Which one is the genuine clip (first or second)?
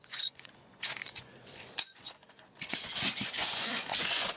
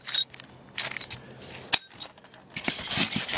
second